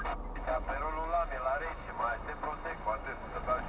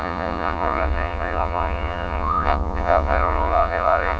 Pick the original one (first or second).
first